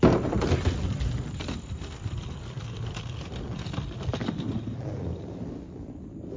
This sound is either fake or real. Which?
fake